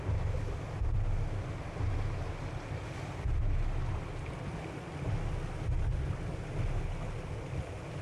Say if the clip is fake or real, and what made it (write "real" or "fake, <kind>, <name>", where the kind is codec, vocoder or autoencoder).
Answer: real